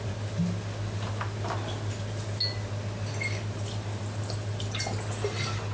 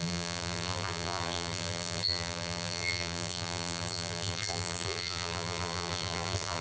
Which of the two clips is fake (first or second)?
second